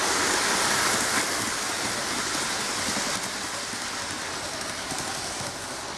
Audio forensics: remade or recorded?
recorded